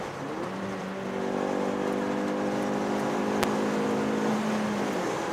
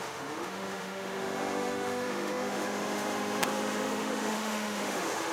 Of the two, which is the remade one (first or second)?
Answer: second